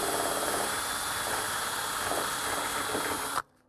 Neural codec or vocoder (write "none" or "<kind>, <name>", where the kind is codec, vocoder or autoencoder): none